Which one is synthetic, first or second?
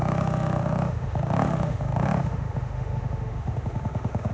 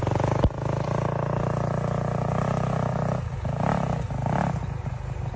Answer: first